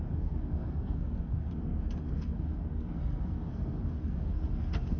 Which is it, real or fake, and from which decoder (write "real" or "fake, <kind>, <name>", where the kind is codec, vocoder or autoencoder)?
fake, codec, SNAC